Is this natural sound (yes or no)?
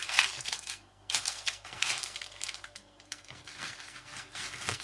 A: no